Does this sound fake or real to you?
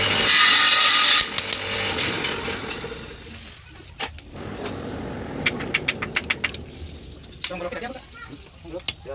real